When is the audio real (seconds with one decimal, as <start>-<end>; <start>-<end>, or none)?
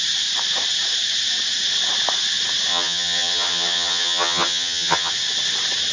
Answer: 0.0-2.7; 5.1-5.9